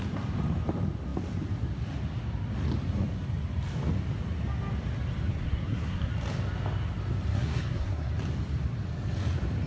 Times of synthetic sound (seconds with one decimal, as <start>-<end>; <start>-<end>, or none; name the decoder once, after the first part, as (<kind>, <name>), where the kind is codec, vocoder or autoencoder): 5.3-6.1 (codec, SNAC); 7.3-8.1